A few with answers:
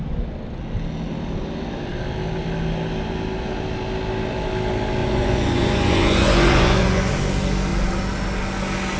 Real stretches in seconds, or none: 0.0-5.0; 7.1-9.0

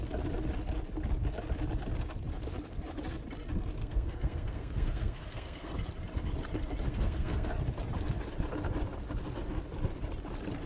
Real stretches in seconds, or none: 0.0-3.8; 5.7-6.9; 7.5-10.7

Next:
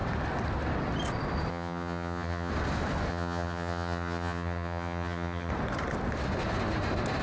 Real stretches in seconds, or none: 0.0-1.5; 2.5-3.1; 5.5-7.2

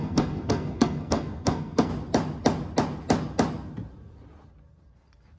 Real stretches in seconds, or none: 1.9-5.4